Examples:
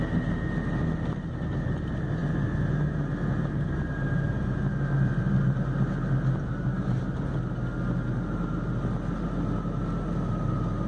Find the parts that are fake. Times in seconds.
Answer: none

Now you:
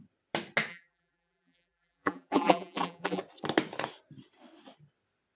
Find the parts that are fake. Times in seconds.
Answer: 0.7-3.2 (vocoder, BigVGAN v2)